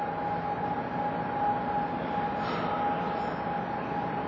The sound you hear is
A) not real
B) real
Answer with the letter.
B